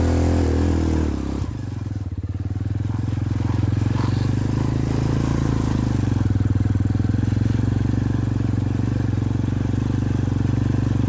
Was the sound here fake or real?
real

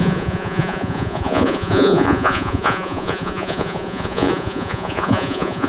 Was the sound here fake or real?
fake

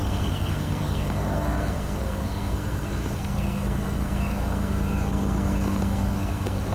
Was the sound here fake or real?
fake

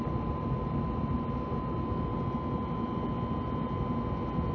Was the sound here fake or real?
real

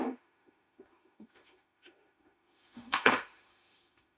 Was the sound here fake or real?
fake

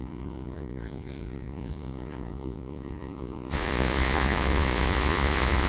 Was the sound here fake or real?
fake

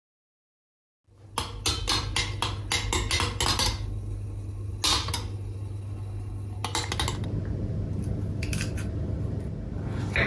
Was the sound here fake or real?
real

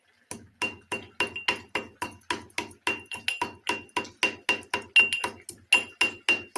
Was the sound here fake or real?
real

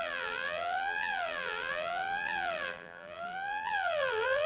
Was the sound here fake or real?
fake